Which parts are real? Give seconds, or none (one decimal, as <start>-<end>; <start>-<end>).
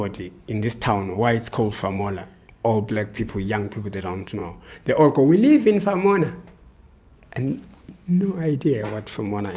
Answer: 2.6-3.2; 4.4-6.5